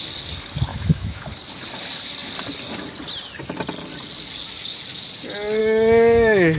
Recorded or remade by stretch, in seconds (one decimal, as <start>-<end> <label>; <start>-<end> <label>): 0.0-0.7 recorded; 0.7-1.3 remade; 1.3-5.6 recorded; 5.6-6.6 remade